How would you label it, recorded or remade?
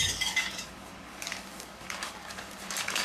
remade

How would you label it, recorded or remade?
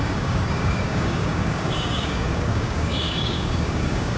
remade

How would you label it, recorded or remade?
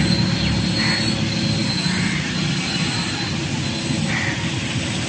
recorded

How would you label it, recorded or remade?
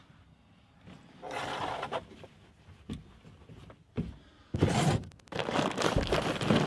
recorded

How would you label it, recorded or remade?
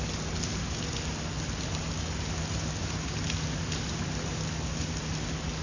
recorded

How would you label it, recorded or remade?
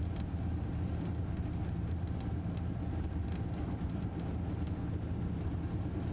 recorded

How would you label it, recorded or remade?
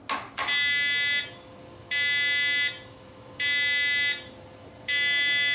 recorded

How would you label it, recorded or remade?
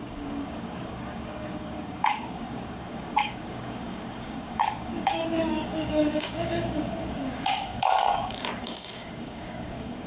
remade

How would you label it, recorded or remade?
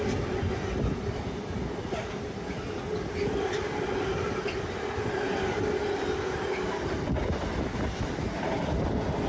recorded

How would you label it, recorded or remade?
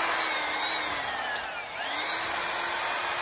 recorded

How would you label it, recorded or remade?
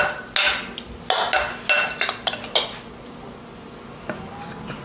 recorded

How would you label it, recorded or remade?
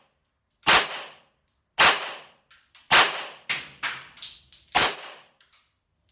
recorded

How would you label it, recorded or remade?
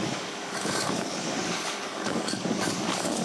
remade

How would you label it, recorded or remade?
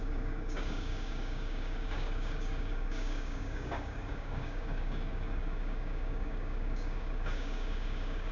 remade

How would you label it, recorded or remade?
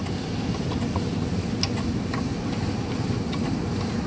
recorded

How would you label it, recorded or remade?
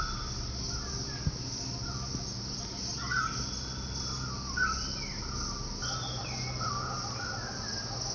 recorded